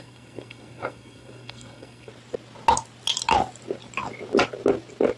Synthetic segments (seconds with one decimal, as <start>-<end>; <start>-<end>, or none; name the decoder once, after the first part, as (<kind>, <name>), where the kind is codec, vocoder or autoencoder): 0.0-2.1 (codec, SNAC)